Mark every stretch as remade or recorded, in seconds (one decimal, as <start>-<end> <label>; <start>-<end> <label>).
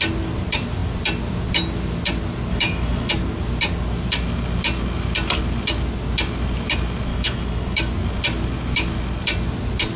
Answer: 0.0-2.5 recorded; 2.5-3.1 remade; 3.1-7.1 recorded; 7.1-7.9 remade; 7.9-10.0 recorded